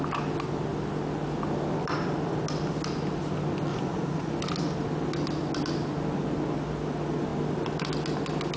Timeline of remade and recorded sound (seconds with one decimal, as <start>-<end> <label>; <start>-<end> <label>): 0.0-3.7 recorded; 3.7-4.3 remade; 4.3-8.6 recorded

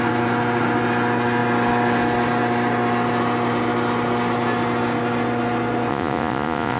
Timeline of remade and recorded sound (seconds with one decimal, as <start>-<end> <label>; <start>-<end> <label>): 0.0-5.9 recorded; 5.9-6.8 remade

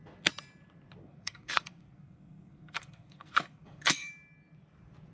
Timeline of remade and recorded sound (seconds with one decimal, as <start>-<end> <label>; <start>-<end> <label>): 0.0-1.0 recorded; 1.0-4.1 remade; 4.1-5.1 recorded

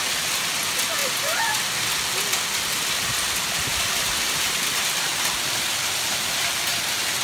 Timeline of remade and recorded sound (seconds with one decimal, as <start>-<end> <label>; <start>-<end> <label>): 0.0-3.7 recorded; 3.7-6.3 remade; 6.3-7.2 recorded